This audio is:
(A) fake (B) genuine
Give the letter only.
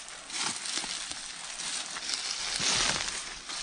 B